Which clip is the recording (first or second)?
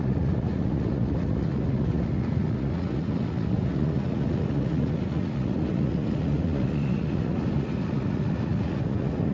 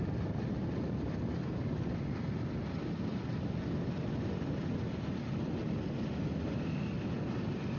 second